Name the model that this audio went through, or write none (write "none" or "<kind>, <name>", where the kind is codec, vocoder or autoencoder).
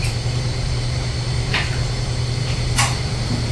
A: vocoder, BigVGAN v2